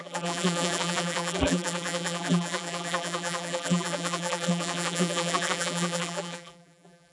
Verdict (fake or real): fake